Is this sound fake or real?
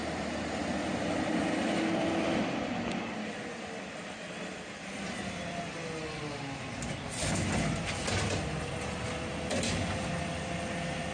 real